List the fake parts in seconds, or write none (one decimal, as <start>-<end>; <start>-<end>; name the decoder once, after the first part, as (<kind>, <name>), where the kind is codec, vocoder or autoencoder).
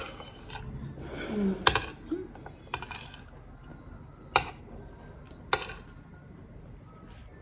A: none